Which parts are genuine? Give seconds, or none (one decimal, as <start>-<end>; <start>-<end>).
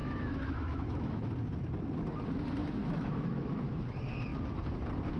1.3-2.6; 3.7-5.2